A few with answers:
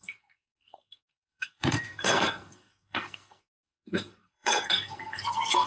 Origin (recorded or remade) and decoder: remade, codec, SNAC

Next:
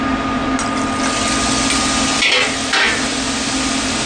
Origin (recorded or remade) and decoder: recorded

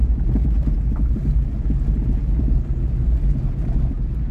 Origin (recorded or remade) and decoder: recorded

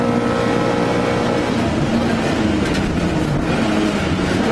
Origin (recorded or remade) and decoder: recorded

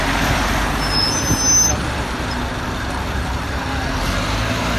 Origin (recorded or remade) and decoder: recorded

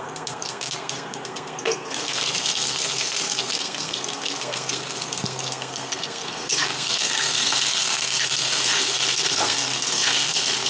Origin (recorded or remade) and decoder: remade, codec, SNAC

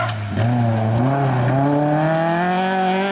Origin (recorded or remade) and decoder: recorded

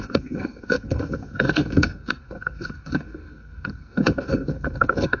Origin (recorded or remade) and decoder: remade, codec, SNAC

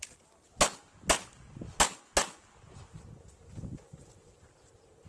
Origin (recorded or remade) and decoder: recorded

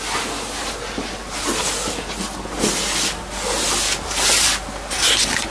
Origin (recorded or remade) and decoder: recorded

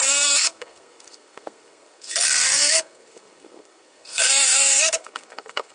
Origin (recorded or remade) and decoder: remade, codec, SNAC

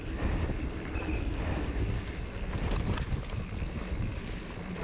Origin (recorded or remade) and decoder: recorded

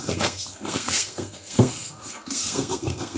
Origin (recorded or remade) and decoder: remade, codec, SNAC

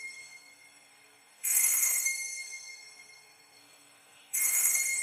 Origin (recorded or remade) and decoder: remade, codec, SNAC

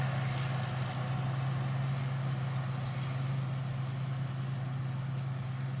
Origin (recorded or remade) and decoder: recorded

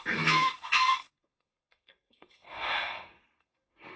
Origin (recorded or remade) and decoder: remade, codec, SNAC